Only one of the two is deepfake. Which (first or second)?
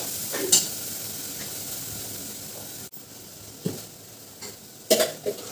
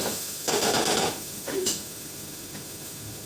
second